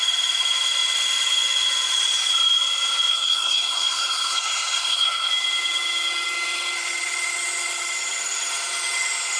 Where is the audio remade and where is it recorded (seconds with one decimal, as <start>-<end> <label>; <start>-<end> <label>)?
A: 0.0-3.1 recorded; 3.1-5.3 remade; 5.3-9.4 recorded